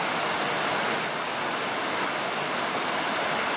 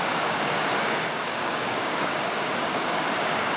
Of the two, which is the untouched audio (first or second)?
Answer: first